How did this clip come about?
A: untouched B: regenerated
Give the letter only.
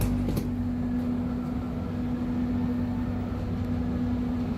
A